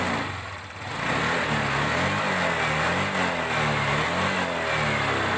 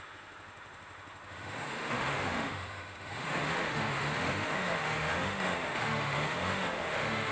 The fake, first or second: second